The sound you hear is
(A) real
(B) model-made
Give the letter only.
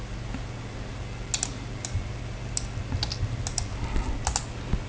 A